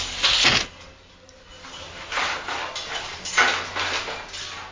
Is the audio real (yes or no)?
yes